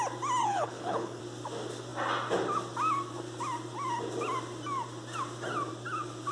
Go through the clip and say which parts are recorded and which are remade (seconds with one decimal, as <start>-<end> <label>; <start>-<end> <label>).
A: 0.0-0.4 recorded; 0.4-1.2 remade; 1.2-6.3 recorded